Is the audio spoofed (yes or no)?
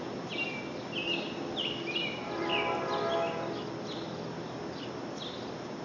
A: no